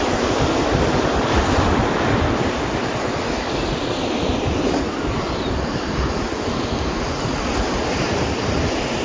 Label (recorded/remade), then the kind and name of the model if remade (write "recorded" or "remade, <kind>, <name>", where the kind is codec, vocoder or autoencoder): recorded